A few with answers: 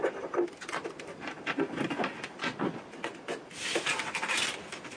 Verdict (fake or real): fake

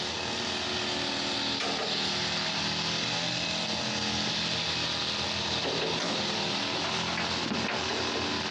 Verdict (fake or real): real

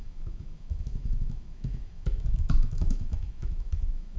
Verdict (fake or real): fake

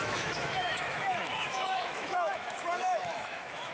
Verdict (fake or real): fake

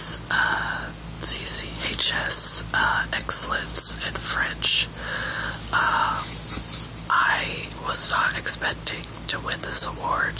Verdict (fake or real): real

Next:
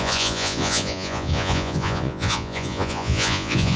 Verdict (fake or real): fake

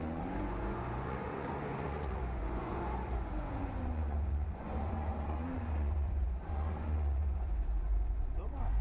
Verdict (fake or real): fake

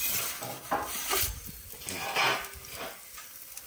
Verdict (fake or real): real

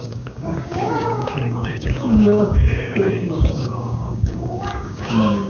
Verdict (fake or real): fake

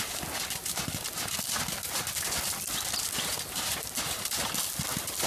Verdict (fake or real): real